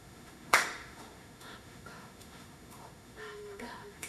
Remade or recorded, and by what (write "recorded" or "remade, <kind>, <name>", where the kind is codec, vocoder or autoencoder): remade, autoencoder, DAC-VAE